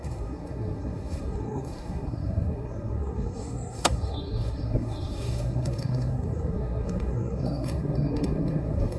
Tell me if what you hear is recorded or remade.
remade